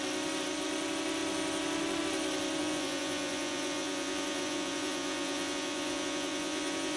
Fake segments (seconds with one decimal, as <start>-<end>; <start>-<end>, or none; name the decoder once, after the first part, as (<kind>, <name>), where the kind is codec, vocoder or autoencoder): 2.6-7.0 (vocoder, Vocos)